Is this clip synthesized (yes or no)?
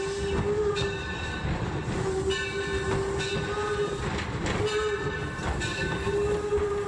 no